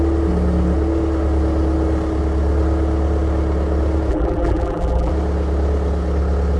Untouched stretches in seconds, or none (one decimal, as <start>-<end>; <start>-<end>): 0.0-4.1; 5.1-6.6